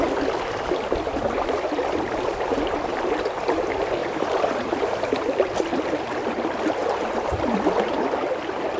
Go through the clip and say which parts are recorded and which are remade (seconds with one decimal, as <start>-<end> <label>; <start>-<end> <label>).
0.0-4.0 recorded; 4.0-5.1 remade; 5.1-6.8 recorded; 6.8-7.4 remade; 7.4-8.8 recorded